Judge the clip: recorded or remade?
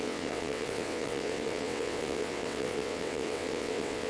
remade